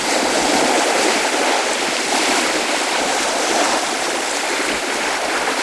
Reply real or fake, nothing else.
real